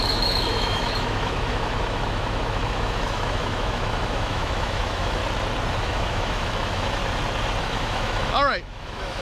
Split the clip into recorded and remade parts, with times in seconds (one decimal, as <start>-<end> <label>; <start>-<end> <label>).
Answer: 0.0-5.2 remade; 5.2-5.7 recorded; 5.7-7.0 remade; 7.0-7.6 recorded; 7.6-9.2 remade